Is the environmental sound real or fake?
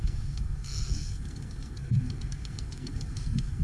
fake